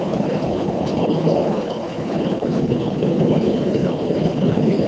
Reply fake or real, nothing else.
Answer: fake